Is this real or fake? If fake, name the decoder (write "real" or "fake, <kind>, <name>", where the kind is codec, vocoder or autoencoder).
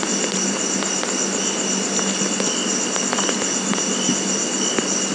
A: real